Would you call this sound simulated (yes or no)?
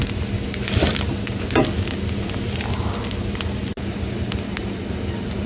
no